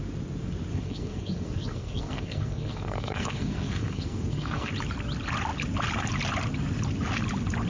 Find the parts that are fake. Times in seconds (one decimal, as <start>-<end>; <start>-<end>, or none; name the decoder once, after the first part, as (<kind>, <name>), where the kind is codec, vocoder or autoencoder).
0.7-4.7 (codec, SNAC)